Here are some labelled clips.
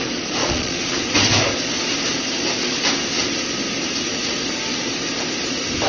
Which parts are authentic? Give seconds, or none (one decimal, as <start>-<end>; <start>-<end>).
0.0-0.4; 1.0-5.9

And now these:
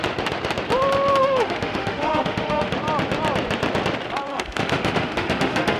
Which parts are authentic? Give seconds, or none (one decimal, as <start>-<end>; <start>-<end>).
0.0-1.2; 2.7-4.3

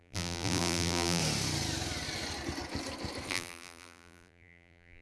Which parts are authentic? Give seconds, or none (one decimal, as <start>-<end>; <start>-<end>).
1.2-3.3

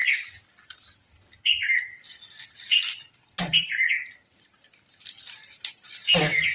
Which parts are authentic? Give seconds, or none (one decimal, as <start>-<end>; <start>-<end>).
0.0-5.4; 5.9-6.5